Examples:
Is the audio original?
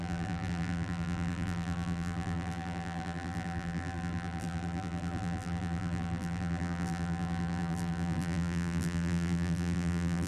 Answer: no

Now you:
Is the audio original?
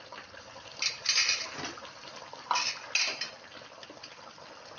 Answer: yes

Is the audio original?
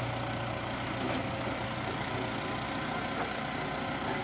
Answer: yes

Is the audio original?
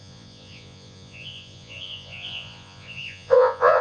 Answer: no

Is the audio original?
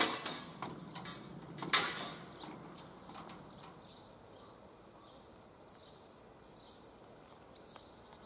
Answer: yes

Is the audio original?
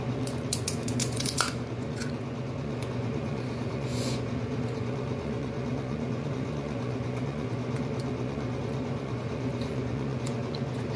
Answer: no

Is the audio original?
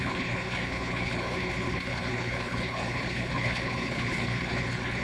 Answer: no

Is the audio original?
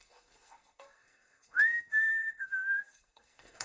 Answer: no